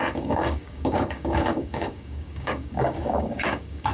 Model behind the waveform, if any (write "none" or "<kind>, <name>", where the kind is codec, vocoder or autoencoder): codec, DAC